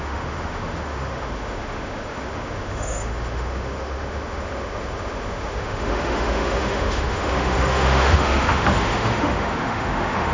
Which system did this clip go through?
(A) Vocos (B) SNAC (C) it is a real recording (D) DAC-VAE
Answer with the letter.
D